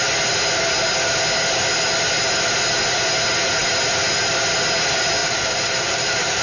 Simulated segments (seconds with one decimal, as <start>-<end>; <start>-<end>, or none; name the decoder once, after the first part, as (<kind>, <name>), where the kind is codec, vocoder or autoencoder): 5.2-6.4 (vocoder, BigVGAN v2)